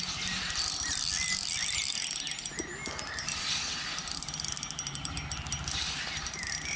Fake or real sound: real